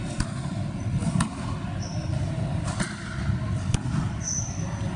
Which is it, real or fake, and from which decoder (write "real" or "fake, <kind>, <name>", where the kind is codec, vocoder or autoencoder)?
real